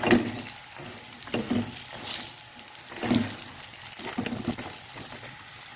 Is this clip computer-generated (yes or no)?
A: no